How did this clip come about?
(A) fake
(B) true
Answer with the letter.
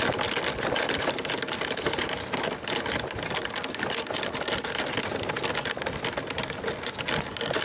B